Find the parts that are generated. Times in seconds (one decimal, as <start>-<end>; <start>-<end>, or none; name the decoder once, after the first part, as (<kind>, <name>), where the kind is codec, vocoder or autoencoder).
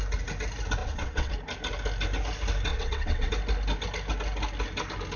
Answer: 0.8-1.3 (vocoder, WaveNeXt); 2.7-3.3